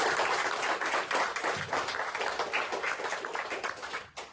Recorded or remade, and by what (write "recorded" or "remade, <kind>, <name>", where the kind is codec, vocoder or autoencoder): recorded